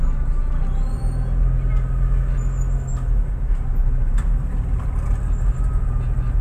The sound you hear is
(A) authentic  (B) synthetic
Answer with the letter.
A